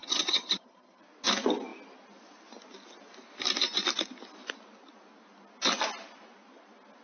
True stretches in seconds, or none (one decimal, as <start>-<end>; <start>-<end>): 1.0-7.0